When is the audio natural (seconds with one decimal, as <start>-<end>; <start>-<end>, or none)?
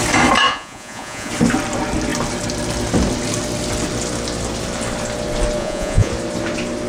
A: 0.0-0.5; 1.3-5.6; 6.1-6.9